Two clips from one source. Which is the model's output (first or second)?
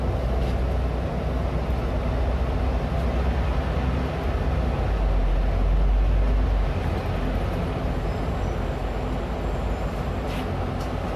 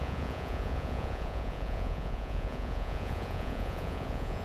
second